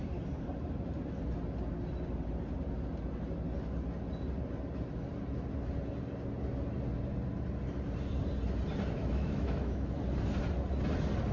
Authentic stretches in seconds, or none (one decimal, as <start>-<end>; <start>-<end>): 0.0-9.0; 10.0-11.3